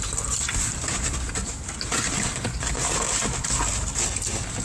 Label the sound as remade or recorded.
recorded